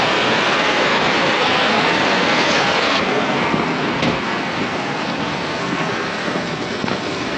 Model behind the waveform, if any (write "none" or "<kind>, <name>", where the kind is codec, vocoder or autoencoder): codec, SNAC